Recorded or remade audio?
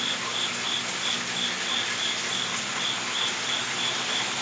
recorded